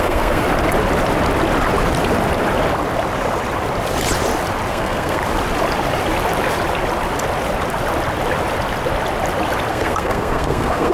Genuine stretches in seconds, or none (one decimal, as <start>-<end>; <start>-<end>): 0.4-4.7; 5.2-9.7